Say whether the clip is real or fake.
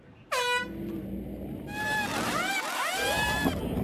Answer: real